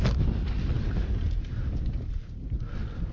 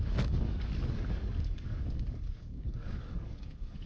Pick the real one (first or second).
first